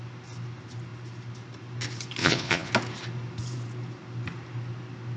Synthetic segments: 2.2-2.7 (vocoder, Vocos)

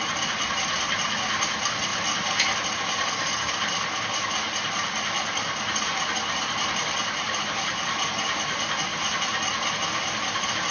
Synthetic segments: none

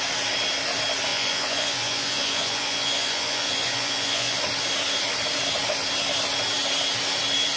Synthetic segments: 1.1-4.4 (vocoder, Vocos)

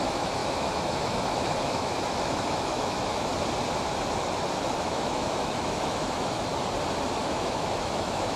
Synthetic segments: 0.0-3.3 (autoencoder, DAC-VAE); 4.8-6.5; 7.2-8.4

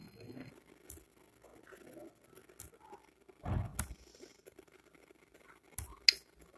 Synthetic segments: 0.0-0.5 (codec, SNAC)

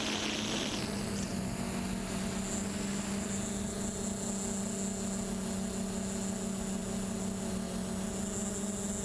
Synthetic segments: none